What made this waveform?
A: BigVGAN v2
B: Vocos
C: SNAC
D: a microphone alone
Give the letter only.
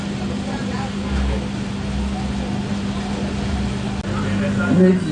D